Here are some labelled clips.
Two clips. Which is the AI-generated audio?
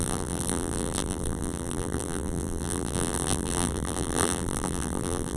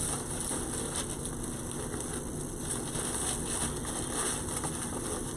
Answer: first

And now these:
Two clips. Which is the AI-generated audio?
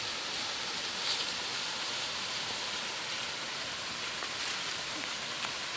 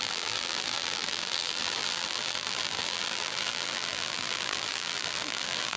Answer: second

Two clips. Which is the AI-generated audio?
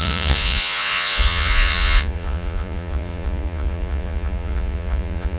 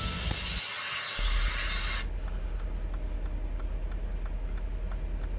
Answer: first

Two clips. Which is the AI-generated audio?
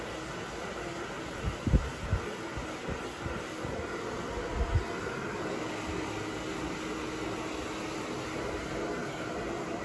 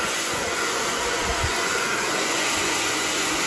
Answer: second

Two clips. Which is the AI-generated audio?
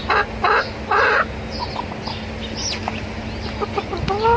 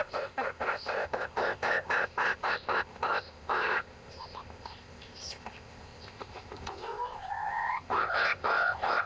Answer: second